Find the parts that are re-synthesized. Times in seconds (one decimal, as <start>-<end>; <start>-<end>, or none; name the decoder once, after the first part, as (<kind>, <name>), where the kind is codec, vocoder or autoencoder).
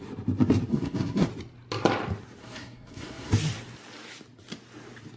0.7-1.3 (codec, SNAC); 2.4-3.3